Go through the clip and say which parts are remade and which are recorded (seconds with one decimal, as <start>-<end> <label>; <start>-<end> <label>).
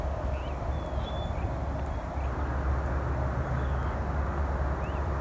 0.0-0.4 remade; 0.4-3.5 recorded; 3.5-4.4 remade; 4.4-5.2 recorded